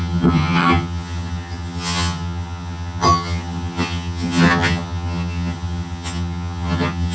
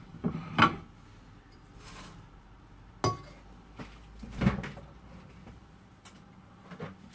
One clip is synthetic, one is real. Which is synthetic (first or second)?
first